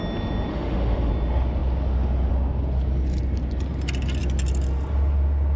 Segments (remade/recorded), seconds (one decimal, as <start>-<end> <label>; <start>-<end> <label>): 0.0-0.5 recorded; 0.5-1.1 remade; 1.1-5.6 recorded